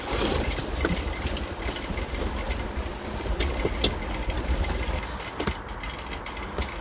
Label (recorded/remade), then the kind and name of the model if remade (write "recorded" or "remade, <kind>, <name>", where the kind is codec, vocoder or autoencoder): recorded